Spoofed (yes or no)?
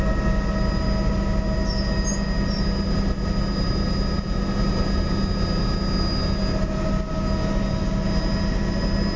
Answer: no